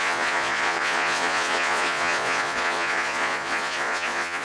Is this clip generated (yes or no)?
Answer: yes